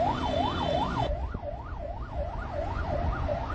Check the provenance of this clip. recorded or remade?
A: remade